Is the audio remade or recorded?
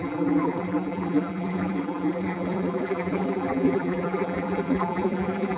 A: remade